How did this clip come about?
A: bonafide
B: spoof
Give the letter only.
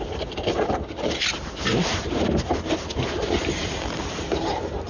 B